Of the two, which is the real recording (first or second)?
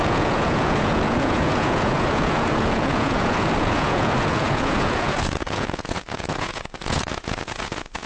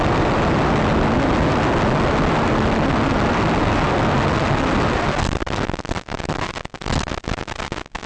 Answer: second